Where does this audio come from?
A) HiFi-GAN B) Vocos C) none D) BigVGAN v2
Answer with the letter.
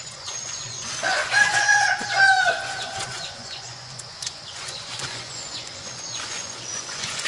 B